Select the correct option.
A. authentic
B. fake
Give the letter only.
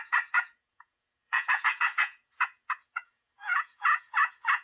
B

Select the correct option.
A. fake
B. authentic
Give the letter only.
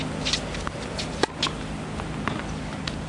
B